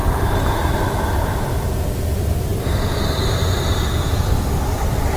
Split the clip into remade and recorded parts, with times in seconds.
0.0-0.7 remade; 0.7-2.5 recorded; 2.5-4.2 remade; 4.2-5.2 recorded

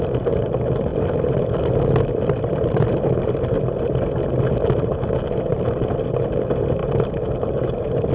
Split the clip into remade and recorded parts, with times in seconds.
0.0-0.9 recorded; 0.9-3.8 remade; 3.8-8.1 recorded

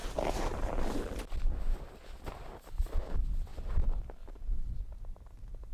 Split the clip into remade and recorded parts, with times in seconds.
0.0-3.5 recorded; 3.5-4.7 remade; 4.7-5.7 recorded

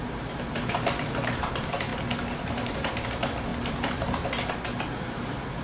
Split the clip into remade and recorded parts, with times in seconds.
0.0-1.9 remade; 1.9-2.4 recorded; 2.4-3.5 remade; 3.5-5.0 recorded; 5.0-5.6 remade